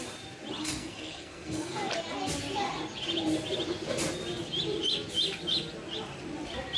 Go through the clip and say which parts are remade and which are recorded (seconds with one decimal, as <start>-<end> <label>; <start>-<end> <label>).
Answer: 0.0-0.6 recorded; 0.6-1.9 remade; 1.9-6.8 recorded

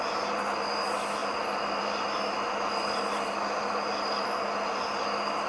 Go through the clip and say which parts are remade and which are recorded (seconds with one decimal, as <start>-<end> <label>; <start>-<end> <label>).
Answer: 0.0-5.5 recorded